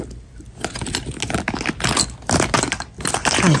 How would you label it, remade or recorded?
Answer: recorded